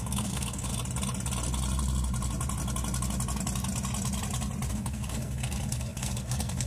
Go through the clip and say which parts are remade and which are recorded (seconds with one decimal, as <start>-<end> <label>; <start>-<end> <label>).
0.0-0.7 remade; 0.7-4.7 recorded; 4.7-6.7 remade